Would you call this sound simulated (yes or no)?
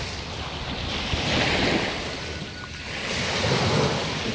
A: no